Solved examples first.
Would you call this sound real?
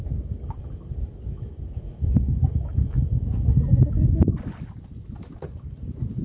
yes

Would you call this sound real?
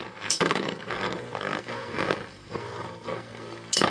no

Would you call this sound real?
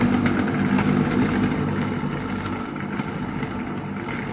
yes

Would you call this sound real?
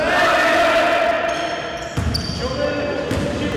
yes